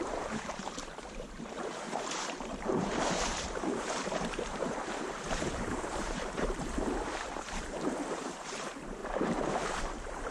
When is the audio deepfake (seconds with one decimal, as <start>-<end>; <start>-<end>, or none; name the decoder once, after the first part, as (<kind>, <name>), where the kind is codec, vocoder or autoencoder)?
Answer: 0.0-10.3 (vocoder, BigVGAN v2)

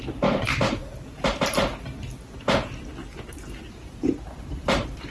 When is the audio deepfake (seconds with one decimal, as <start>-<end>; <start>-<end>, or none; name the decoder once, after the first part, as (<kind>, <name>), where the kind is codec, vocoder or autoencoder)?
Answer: 0.0-0.8 (vocoder, BigVGAN v2); 3.7-5.1

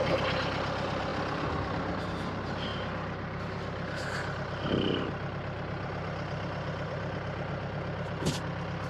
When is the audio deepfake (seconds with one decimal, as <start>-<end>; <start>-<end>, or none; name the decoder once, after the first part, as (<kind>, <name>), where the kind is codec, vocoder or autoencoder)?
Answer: 0.0-2.7 (vocoder, BigVGAN v2); 3.4-8.9

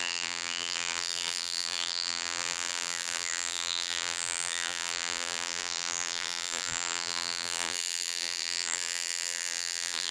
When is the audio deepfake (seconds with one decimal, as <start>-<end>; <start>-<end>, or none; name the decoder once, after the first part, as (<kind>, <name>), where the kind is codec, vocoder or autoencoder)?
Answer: 0.0-10.1 (vocoder, BigVGAN v2)